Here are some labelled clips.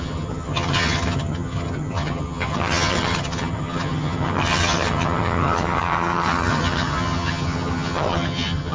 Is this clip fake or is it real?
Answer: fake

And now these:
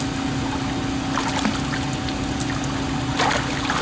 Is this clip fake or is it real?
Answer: real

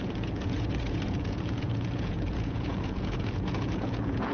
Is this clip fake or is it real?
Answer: fake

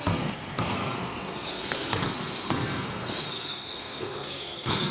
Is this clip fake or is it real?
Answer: fake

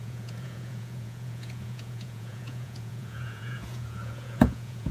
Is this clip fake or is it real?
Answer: fake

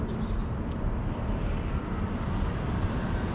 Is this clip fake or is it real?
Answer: real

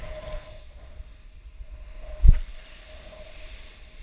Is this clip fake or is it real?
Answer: real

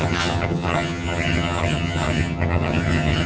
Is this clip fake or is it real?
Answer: fake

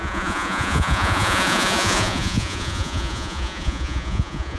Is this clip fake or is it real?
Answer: fake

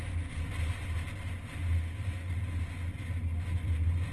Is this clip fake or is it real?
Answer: real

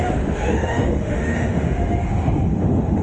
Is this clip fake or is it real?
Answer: fake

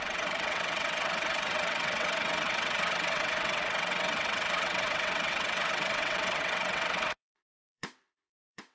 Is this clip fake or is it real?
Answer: fake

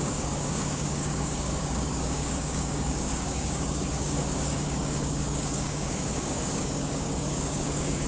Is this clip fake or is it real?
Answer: fake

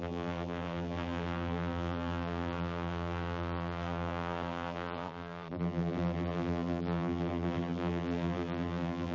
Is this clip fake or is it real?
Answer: fake